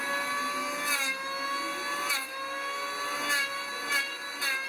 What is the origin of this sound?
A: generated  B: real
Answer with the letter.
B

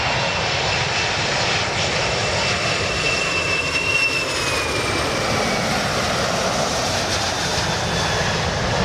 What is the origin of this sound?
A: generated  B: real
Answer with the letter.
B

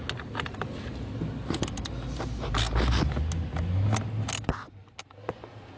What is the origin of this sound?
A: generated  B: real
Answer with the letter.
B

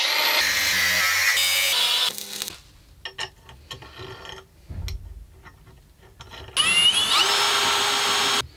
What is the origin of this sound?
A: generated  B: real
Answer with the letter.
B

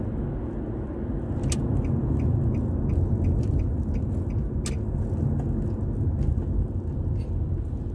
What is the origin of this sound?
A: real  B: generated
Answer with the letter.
A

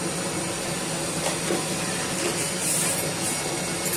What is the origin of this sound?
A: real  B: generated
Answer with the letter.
A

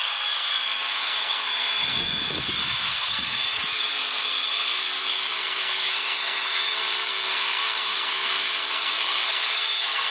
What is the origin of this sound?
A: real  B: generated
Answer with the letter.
B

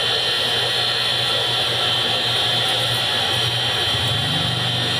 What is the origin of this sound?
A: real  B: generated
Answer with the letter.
A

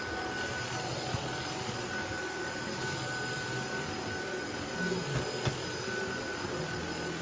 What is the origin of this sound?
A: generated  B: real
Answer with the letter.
B